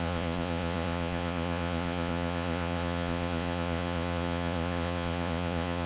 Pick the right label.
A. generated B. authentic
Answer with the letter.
A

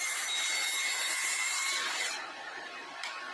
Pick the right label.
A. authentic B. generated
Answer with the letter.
B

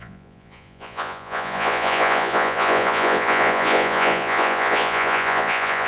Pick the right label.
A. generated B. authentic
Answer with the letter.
A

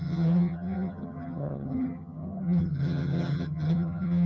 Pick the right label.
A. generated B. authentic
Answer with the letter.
A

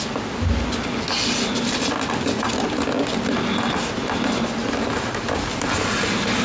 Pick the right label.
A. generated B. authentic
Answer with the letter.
B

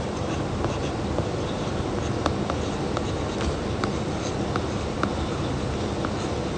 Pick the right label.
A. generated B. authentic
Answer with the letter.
B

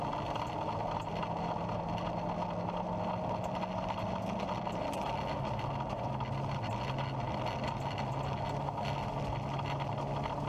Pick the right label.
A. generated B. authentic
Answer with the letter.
B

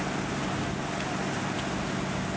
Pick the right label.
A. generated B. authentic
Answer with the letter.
B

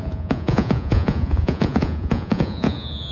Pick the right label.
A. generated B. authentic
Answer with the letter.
A